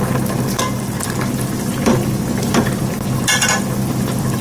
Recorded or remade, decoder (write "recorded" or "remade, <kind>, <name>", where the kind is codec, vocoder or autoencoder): recorded